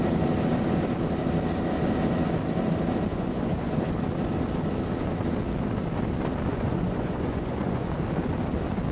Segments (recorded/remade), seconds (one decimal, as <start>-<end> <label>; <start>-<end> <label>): 0.0-3.1 recorded; 3.1-3.7 remade; 3.7-6.5 recorded; 6.5-7.9 remade; 7.9-8.9 recorded